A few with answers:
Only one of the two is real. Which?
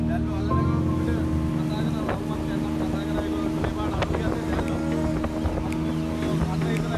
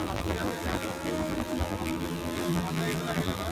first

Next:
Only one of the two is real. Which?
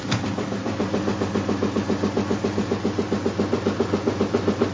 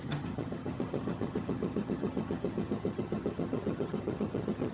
first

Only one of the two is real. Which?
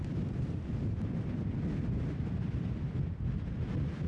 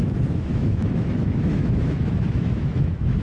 first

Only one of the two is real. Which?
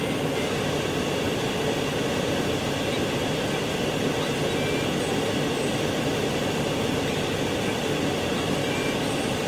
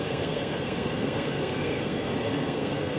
first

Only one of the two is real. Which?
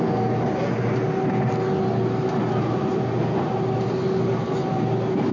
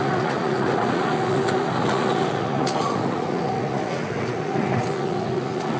first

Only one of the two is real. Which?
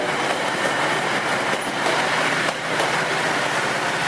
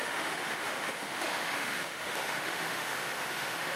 first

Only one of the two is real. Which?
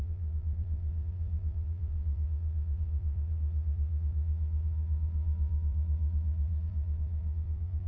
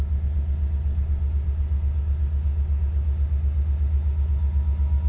second